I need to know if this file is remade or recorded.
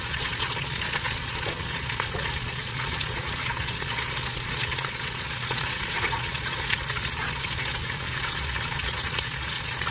remade